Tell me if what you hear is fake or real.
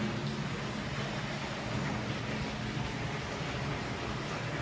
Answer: real